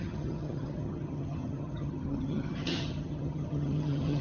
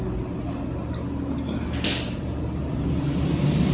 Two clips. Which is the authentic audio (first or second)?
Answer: second